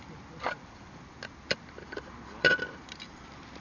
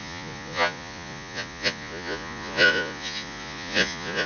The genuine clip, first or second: first